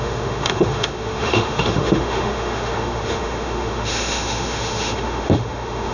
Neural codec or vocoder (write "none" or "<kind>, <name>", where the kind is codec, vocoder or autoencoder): autoencoder, DAC-VAE